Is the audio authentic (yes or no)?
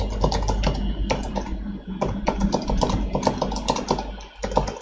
yes